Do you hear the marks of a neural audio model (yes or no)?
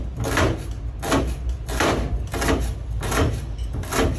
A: no